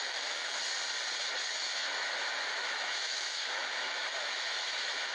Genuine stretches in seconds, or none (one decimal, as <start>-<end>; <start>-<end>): 0.6-1.5